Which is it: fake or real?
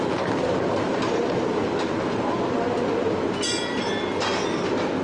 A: real